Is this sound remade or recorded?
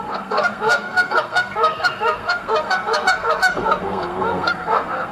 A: remade